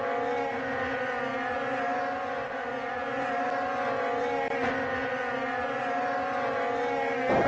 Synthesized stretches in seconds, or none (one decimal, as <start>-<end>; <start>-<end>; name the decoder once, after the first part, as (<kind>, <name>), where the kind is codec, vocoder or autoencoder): none